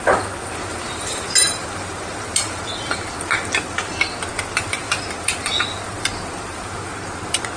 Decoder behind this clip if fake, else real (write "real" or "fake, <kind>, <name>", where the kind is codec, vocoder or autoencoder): real